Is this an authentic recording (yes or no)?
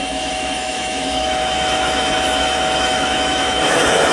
no